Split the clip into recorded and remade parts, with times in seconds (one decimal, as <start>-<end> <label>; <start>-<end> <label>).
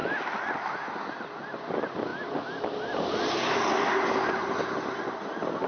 0.0-5.7 recorded